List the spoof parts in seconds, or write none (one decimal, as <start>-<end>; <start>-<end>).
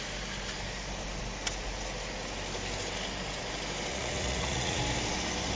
3.9-4.8